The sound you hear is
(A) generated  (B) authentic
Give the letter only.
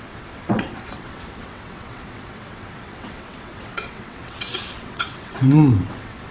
A